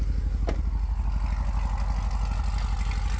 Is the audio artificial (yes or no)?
no